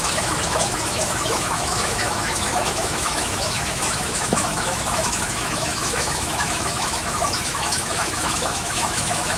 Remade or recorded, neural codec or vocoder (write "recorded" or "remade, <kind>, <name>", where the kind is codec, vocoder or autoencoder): remade, autoencoder, DAC-VAE